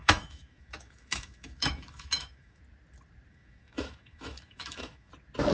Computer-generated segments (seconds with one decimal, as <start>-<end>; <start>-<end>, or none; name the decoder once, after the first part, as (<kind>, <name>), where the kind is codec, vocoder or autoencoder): 0.0-2.6 (autoencoder, DAC-VAE); 3.3-5.1